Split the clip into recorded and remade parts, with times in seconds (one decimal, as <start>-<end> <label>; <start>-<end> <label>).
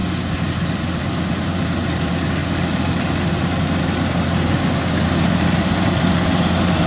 0.0-0.5 recorded; 0.5-2.4 remade; 2.4-5.2 recorded; 5.2-6.9 remade